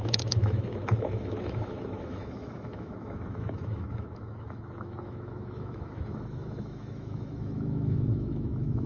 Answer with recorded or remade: remade